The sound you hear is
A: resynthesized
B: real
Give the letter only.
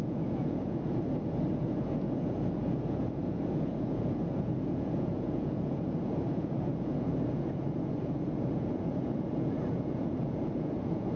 A